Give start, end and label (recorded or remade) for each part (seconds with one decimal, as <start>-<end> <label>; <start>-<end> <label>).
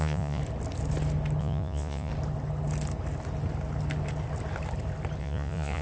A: 0.0-0.4 remade; 0.4-1.4 recorded; 1.4-2.1 remade; 2.1-5.2 recorded; 5.2-5.8 remade